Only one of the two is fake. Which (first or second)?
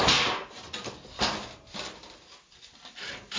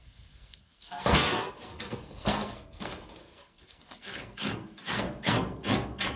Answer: second